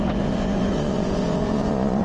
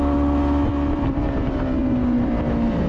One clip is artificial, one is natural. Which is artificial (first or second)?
first